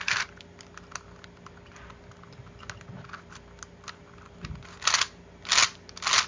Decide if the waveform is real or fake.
real